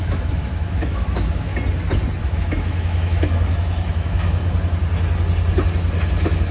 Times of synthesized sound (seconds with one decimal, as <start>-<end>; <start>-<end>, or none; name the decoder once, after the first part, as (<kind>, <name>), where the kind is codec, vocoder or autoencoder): 0.0-1.5 (autoencoder, DAC-VAE); 2.2-4.4